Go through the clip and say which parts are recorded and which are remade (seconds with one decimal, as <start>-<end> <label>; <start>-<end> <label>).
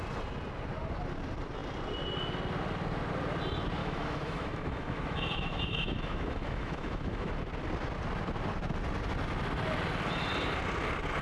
0.0-3.8 recorded; 3.8-7.3 remade; 7.3-11.2 recorded